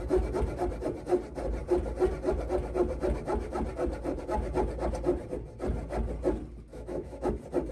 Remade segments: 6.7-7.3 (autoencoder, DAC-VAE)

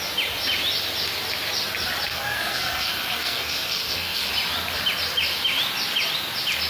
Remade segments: 2.1-4.3 (codec, SNAC)

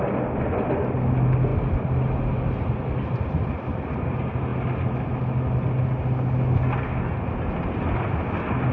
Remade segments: none